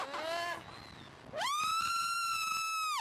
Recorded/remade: recorded